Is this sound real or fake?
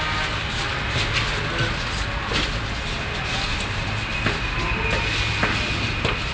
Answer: real